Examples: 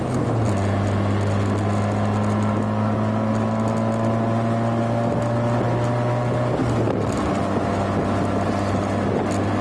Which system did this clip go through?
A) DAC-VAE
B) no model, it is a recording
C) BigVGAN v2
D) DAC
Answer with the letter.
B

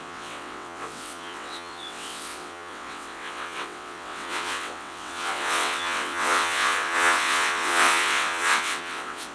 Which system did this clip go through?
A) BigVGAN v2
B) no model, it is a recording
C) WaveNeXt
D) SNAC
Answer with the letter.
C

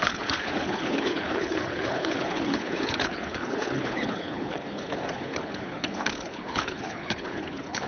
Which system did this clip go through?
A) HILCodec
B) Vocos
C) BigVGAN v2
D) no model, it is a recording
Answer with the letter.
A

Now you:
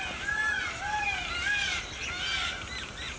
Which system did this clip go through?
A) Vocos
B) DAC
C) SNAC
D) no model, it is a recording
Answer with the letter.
D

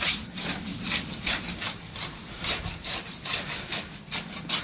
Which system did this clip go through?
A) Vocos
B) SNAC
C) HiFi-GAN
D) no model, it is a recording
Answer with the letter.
D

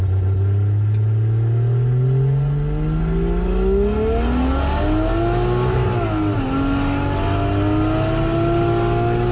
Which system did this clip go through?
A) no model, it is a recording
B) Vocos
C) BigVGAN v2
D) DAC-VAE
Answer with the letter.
A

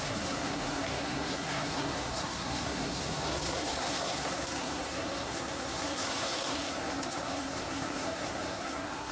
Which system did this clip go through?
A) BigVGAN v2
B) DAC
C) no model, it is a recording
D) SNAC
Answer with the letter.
D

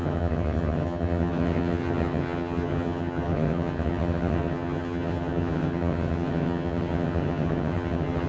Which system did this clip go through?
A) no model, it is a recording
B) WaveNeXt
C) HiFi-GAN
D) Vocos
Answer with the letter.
C